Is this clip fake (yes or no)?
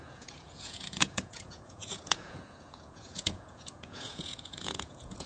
yes